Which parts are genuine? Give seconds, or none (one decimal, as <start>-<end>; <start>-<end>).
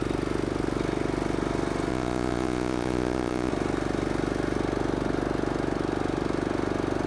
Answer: 0.0-1.9; 3.5-7.1